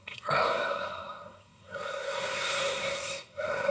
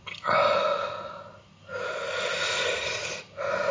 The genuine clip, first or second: second